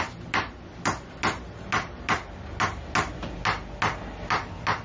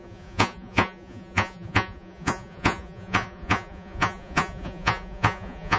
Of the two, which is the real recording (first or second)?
first